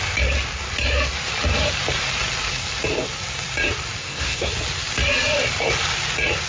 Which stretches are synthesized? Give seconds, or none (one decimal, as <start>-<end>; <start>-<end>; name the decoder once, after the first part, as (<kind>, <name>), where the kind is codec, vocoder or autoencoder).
4.0-4.5 (codec, SNAC)